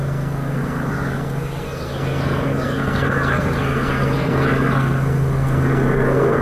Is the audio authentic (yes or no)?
no